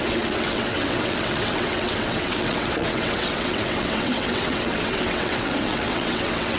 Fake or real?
fake